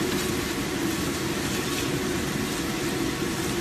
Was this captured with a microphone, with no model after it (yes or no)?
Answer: yes